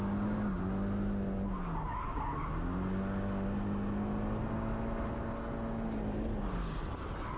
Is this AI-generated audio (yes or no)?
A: no